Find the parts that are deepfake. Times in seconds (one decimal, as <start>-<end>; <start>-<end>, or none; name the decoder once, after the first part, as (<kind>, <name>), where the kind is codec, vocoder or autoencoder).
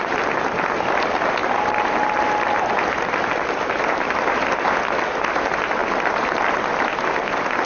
none